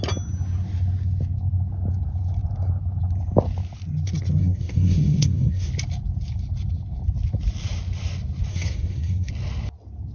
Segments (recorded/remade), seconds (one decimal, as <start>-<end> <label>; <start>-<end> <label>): 0.0-4.4 recorded; 4.4-5.7 remade; 5.7-8.5 recorded; 8.5-9.3 remade; 9.3-10.1 recorded